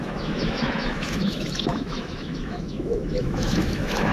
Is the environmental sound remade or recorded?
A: remade